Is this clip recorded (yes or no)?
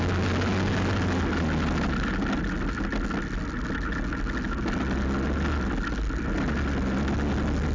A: yes